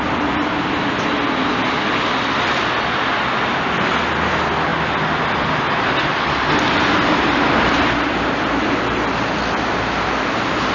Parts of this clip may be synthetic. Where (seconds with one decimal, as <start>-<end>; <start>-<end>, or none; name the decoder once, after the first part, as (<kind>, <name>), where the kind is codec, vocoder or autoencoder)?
none